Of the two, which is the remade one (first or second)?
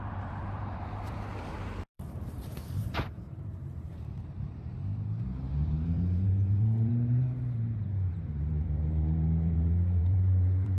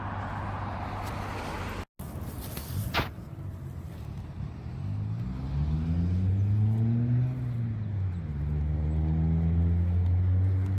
first